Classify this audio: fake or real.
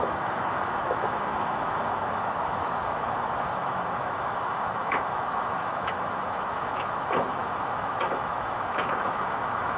fake